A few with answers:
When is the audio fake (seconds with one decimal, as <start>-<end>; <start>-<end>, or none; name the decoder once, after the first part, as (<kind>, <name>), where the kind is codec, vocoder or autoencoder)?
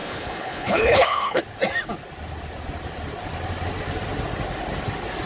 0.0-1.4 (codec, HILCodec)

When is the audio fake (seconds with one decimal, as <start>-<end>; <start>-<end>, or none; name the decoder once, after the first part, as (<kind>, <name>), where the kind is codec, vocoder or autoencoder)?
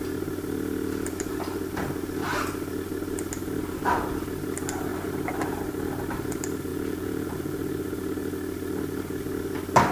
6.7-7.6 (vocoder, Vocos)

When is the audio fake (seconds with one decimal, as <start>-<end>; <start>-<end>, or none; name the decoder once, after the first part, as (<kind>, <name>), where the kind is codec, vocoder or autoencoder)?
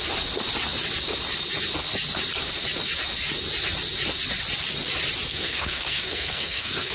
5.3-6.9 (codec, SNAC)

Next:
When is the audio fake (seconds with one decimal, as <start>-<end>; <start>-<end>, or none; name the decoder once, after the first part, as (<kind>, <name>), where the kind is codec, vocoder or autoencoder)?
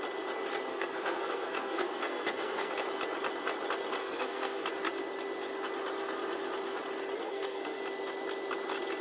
0.7-2.7 (codec, SNAC); 4.0-4.7; 7.2-7.8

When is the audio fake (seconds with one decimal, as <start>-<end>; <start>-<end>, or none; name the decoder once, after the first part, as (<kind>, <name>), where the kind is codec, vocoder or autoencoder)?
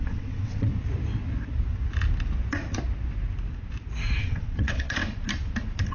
0.0-0.7 (vocoder, WaveNeXt); 4.2-5.0